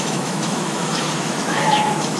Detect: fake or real fake